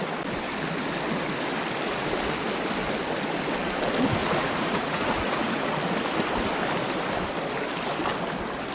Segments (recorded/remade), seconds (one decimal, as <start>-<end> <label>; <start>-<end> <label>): 0.0-4.2 recorded; 4.2-5.7 remade; 5.7-8.7 recorded